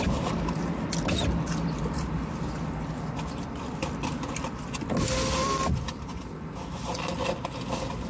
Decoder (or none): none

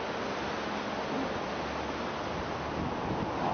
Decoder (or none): none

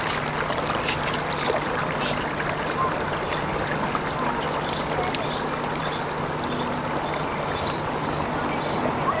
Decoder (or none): none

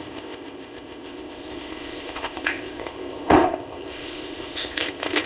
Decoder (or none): codec, ZipCodec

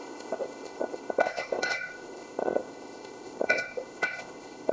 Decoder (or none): codec, ZipCodec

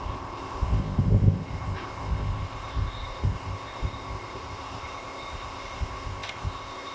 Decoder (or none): codec, ZipCodec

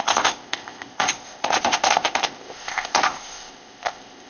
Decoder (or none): codec, ZipCodec